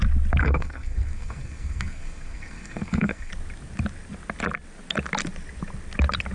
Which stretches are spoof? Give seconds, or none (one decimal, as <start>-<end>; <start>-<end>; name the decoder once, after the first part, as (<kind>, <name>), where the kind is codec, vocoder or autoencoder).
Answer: 0.4-3.3 (codec, SNAC)